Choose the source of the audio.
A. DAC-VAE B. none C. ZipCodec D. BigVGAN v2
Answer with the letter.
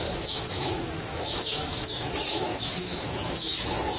A